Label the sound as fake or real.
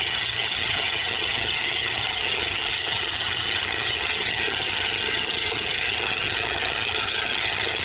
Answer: fake